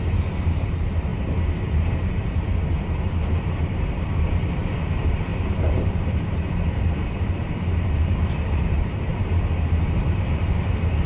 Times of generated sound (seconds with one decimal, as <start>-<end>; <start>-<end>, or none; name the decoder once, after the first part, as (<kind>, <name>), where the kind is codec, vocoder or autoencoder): 0.0-9.1 (vocoder, BigVGAN v2); 10.0-11.1